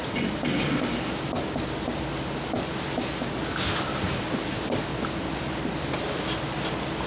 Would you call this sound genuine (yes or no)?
yes